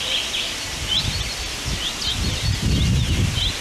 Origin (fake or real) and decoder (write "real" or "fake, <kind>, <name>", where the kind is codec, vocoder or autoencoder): real